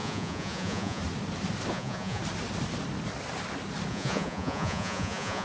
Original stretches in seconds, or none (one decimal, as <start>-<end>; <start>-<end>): 1.0-1.7; 2.2-3.9